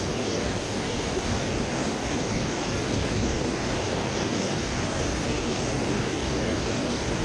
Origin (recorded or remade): remade